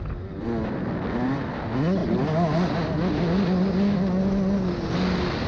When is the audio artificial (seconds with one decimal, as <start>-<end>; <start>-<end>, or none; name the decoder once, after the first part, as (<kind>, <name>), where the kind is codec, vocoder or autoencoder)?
none